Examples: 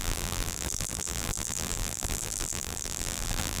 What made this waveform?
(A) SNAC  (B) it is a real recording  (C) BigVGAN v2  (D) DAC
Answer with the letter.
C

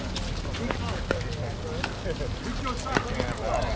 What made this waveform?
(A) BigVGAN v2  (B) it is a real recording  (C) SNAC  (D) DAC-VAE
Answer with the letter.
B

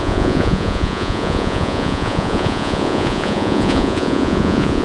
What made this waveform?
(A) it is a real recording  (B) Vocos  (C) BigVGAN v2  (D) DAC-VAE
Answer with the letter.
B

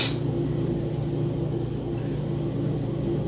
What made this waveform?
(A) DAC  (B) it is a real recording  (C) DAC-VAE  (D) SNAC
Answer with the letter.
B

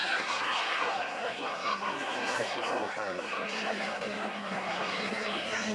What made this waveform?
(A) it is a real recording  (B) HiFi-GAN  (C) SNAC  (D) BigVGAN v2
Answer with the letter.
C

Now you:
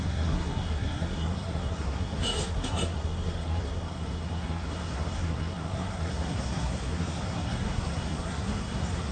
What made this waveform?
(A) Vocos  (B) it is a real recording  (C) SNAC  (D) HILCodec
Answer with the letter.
C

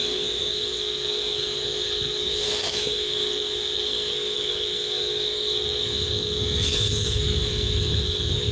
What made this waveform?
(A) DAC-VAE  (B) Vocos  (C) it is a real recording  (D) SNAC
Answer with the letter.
D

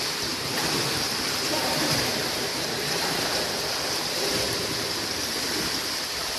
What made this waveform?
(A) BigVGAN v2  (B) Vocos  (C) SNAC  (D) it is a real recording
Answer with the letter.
A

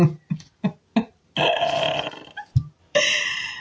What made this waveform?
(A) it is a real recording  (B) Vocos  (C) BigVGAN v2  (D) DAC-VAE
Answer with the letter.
A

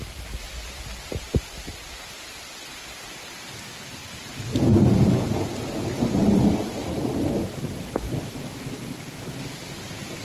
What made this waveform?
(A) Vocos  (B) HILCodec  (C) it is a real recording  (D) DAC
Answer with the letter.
C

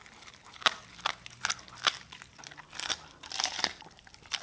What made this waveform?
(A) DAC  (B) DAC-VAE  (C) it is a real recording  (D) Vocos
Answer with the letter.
C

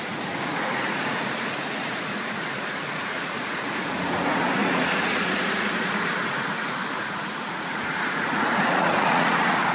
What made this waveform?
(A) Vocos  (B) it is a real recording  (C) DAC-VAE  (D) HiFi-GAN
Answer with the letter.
A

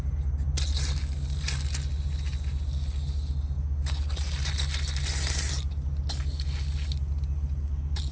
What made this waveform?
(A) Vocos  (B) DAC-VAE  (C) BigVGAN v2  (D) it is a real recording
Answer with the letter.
D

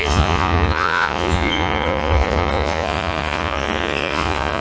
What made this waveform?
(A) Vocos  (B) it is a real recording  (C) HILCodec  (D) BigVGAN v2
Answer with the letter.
A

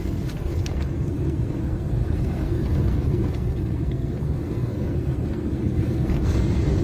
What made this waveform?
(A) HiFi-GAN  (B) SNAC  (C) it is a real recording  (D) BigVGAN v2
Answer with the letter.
B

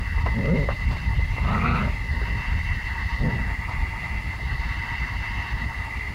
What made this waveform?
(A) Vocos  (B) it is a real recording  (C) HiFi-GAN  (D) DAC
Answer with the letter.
B